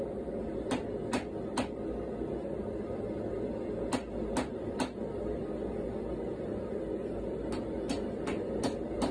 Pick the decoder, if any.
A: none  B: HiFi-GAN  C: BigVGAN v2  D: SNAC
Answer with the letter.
A